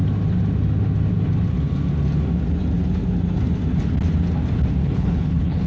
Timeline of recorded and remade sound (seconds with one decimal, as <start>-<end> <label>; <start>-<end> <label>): 0.0-4.8 recorded; 4.8-5.7 remade